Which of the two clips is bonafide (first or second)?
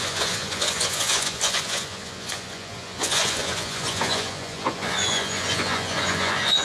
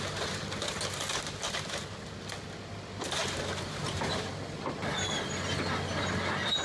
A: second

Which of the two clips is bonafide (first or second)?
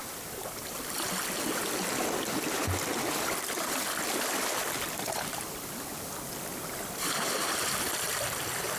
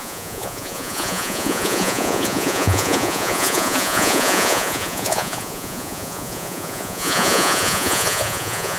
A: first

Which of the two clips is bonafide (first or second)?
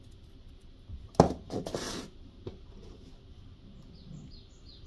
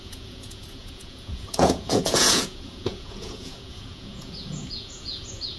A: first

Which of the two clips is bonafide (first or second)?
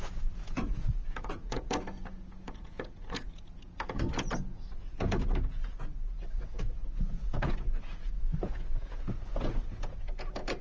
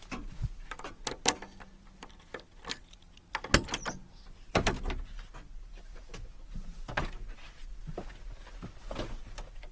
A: second